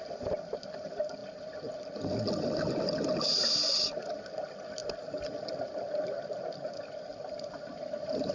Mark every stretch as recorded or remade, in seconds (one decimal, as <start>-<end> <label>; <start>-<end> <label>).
0.0-8.3 recorded